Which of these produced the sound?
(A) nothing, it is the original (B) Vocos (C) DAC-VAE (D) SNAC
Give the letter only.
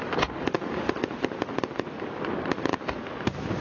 A